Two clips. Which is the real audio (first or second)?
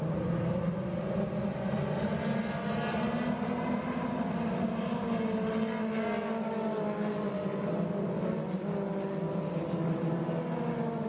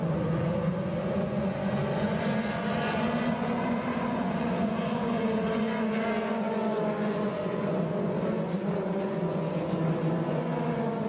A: first